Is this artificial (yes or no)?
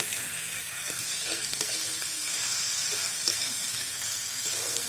yes